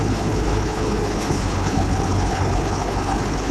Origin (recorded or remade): remade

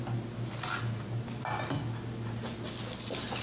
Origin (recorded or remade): recorded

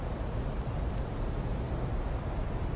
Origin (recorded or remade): recorded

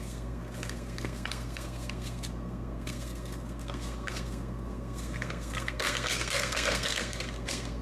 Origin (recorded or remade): remade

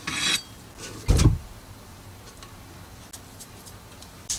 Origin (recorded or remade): recorded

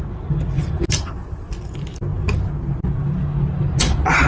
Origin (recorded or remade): recorded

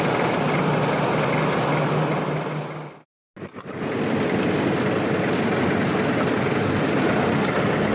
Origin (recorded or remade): recorded